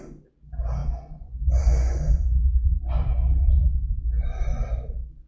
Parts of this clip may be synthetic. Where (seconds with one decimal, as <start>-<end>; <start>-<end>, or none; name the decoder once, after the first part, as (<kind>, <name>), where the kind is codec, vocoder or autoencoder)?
0.8-4.0 (vocoder, Vocos)